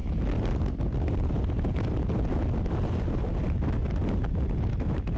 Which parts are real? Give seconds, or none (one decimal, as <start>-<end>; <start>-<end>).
0.0-5.2